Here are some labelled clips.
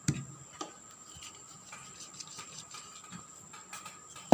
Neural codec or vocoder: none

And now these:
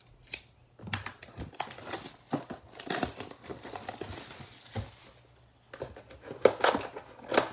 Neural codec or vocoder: none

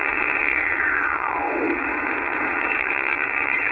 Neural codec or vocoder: vocoder, WaveNeXt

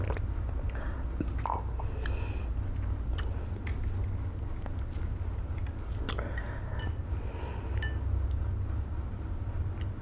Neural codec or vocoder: none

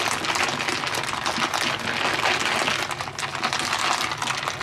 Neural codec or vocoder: none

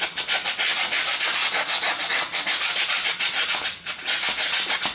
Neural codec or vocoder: none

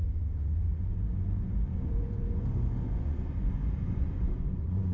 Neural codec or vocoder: vocoder, Vocos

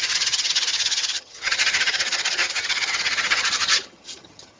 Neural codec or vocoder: vocoder, HiFi-GAN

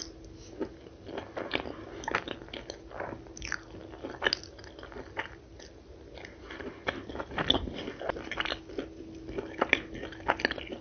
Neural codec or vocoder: none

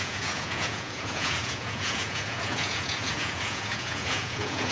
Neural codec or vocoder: vocoder, Vocos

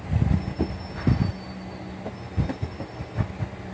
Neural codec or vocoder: none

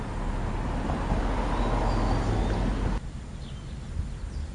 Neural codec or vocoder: none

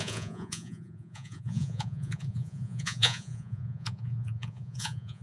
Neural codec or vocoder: vocoder, Vocos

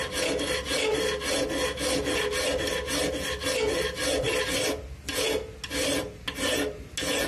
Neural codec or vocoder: none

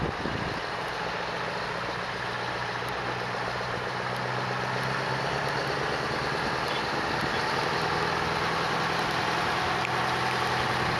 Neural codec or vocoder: none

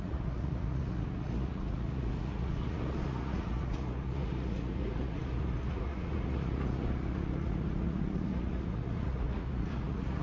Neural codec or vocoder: vocoder, Vocos